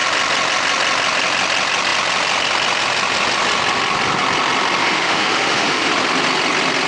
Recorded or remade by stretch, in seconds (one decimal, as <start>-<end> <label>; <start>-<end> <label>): 0.0-4.8 recorded; 4.8-5.9 remade; 5.9-6.9 recorded